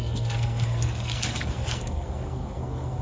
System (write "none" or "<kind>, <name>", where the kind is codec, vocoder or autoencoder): codec, SNAC